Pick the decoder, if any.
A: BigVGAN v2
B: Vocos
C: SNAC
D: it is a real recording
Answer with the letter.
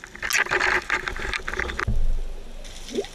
D